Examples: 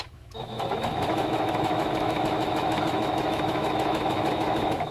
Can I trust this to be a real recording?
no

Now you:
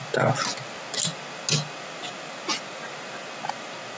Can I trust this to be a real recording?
yes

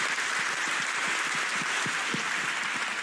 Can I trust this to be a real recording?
yes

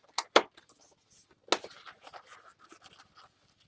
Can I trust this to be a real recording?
yes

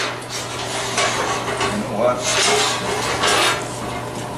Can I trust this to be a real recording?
yes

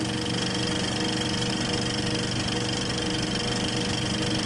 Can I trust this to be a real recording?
yes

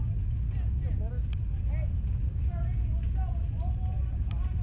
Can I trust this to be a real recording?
yes